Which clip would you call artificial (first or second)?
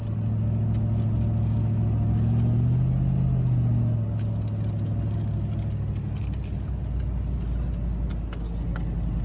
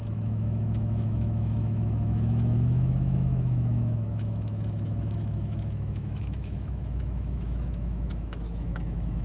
second